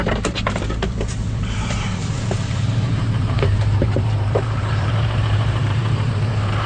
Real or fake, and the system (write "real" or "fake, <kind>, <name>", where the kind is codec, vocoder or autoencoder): fake, vocoder, BigVGAN v2